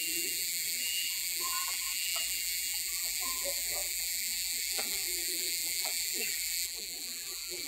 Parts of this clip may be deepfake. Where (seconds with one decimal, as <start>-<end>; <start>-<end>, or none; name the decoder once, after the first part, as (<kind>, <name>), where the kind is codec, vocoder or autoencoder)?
0.0-7.7 (vocoder, BigVGAN v2)